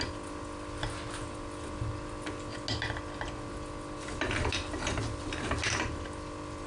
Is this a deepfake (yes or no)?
no